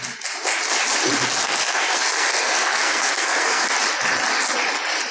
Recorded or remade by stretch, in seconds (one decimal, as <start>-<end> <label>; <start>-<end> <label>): 0.0-1.4 recorded; 1.4-3.7 remade; 3.7-5.1 recorded